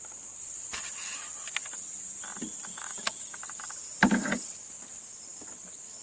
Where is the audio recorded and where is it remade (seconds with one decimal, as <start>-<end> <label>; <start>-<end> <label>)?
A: 0.0-2.7 recorded; 2.7-3.4 remade; 3.4-6.0 recorded